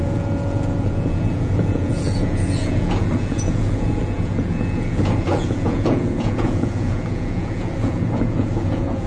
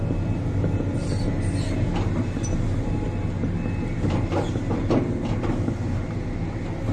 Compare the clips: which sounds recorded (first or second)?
second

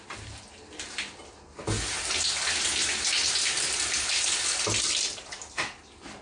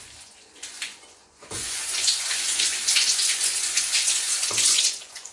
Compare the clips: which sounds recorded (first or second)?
first